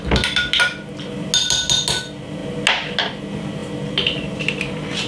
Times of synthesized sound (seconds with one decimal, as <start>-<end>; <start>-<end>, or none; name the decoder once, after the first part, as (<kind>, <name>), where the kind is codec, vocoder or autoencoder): none